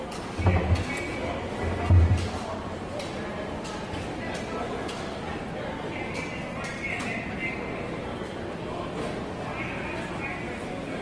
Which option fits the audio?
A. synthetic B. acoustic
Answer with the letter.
B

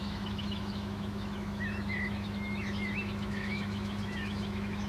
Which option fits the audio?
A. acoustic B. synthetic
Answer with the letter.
B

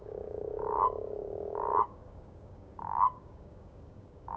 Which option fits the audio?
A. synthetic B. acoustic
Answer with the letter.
A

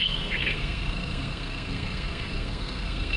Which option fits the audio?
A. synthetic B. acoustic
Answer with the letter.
A